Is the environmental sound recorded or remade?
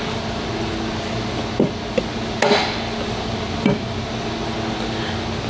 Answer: recorded